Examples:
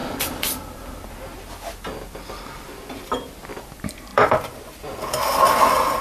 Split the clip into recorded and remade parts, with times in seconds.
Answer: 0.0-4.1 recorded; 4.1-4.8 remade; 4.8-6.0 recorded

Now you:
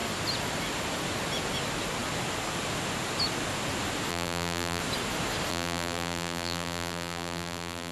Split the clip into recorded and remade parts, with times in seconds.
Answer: 0.0-4.1 recorded; 4.1-4.8 remade; 4.8-5.5 recorded; 5.5-7.9 remade